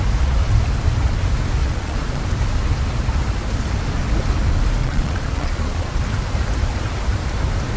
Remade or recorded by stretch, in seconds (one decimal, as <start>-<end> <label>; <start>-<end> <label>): 0.0-1.6 recorded; 1.6-2.2 remade; 2.2-4.8 recorded; 4.8-6.0 remade; 6.0-7.8 recorded